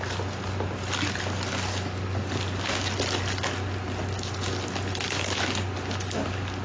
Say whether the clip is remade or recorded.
recorded